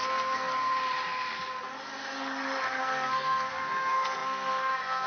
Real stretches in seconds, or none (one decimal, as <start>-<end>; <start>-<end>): 0.7-2.8